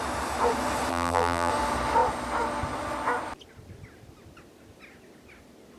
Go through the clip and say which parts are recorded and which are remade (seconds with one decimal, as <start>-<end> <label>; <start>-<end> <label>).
0.0-0.9 recorded; 0.9-1.5 remade; 1.5-5.8 recorded